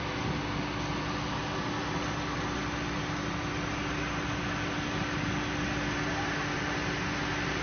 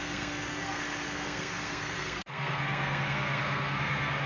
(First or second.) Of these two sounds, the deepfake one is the second